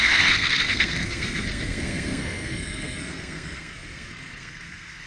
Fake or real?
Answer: fake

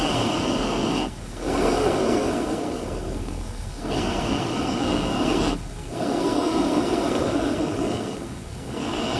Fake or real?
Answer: fake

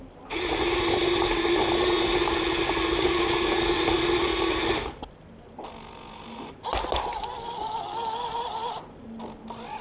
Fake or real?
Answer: real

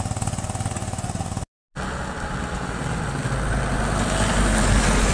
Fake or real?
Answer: real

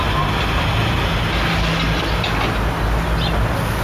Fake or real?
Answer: real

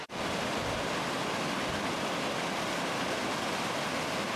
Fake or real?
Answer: real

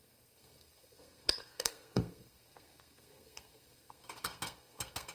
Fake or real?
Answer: fake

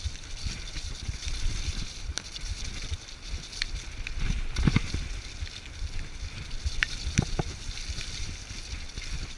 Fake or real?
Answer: real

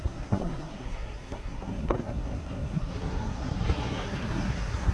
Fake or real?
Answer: fake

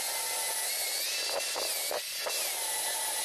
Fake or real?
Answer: real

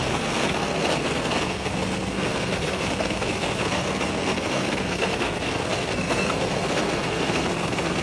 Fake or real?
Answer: fake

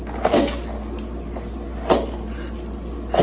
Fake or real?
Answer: real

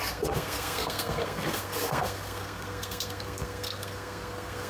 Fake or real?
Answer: fake